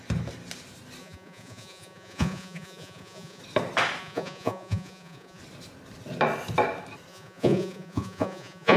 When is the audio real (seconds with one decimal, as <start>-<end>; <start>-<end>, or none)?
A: 0.0-1.0; 3.4-4.0; 5.4-7.1